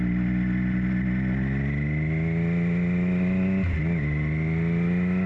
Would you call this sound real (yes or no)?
yes